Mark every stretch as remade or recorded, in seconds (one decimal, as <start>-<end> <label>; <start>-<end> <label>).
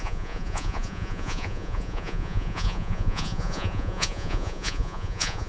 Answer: 0.0-5.5 remade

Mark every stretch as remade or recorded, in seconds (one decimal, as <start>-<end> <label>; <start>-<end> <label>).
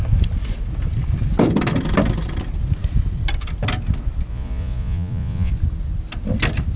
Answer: 0.0-4.3 recorded; 4.3-5.5 remade; 5.5-6.8 recorded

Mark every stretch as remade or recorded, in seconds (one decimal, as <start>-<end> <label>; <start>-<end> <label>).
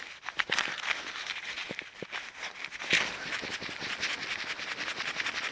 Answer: 0.0-5.5 recorded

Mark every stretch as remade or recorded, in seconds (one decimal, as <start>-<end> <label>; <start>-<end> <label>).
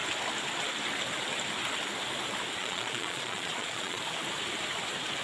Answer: 0.0-2.6 recorded; 2.6-4.0 remade; 4.0-5.2 recorded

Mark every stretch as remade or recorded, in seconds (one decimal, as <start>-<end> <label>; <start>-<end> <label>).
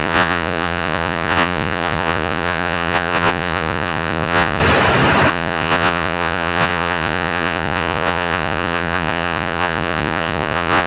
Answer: 0.0-4.6 remade; 4.6-5.3 recorded; 5.3-10.9 remade